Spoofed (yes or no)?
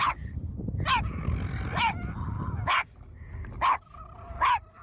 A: no